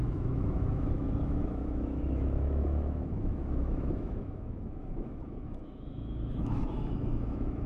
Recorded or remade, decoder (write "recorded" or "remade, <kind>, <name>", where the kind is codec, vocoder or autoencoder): remade, autoencoder, DAC-VAE